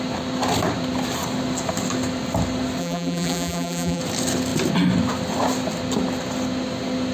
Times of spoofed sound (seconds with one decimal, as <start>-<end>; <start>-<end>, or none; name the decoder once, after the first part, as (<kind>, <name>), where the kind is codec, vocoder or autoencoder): 2.8-4.0 (vocoder, BigVGAN v2)